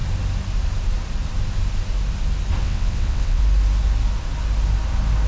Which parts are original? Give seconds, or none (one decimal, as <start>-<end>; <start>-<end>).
0.0-2.6; 3.4-5.3